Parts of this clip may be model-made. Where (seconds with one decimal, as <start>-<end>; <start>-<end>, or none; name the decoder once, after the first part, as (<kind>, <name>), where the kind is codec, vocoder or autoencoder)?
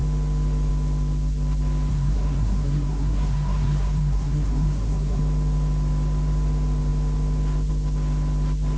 1.9-5.2 (codec, SNAC)